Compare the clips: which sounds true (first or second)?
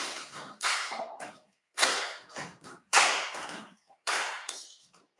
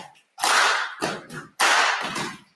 second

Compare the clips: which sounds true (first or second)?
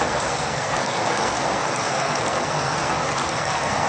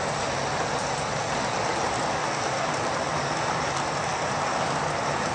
second